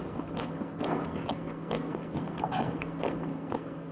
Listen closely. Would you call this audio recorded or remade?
remade